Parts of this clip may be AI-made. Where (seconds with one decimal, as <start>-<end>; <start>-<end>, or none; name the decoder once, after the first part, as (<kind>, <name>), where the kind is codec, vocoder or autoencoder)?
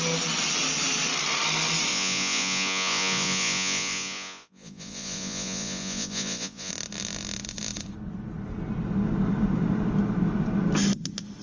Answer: 1.9-6.7 (vocoder, Vocos)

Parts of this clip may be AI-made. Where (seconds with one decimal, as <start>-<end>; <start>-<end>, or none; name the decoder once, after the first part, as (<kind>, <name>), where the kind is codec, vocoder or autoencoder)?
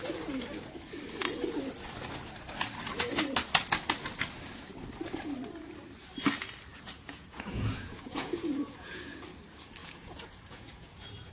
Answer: 6.7-9.0 (vocoder, Vocos); 9.8-11.3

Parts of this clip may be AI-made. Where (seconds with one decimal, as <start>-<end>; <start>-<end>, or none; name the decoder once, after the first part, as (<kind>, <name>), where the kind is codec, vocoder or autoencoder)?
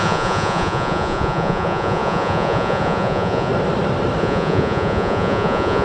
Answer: 0.0-3.5 (vocoder, Vocos); 4.2-5.8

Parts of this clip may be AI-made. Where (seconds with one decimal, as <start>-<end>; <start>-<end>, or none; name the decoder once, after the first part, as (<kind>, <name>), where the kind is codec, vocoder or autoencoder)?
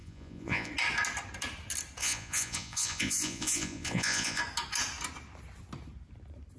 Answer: 0.0-0.7 (vocoder, Vocos); 2.0-4.4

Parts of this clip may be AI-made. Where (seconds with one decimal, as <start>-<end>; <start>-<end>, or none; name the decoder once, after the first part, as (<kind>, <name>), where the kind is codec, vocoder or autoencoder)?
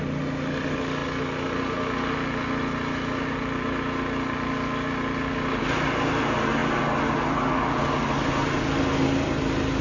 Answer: none